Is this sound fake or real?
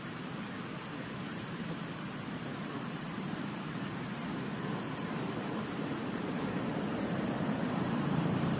fake